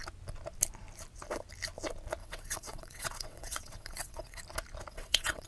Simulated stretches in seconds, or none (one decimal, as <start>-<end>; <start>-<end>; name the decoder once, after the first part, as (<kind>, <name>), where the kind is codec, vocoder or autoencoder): 2.2-4.4 (vocoder, WaveNeXt); 4.9-5.5